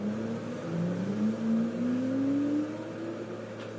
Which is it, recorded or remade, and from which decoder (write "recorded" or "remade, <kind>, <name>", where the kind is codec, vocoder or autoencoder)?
recorded